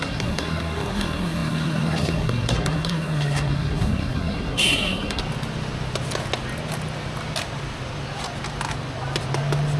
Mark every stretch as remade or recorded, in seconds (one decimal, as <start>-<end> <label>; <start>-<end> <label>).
0.0-5.2 remade; 5.2-9.8 recorded